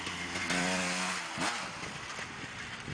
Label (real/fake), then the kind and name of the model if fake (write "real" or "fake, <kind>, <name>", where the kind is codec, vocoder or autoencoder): real